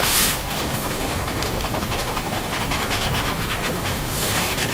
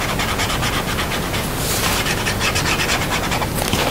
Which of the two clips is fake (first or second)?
first